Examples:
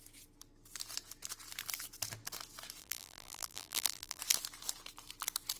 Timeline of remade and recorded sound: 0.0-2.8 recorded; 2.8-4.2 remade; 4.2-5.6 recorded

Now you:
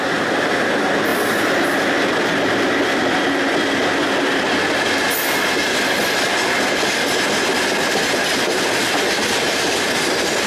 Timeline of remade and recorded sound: 0.0-10.5 recorded

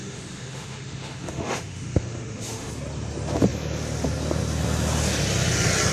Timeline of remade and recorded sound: 0.0-2.7 remade; 2.7-5.9 recorded

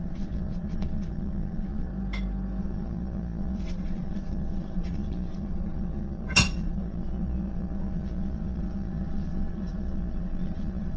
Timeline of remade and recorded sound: 0.0-1.9 remade; 1.9-2.6 recorded; 2.6-11.0 remade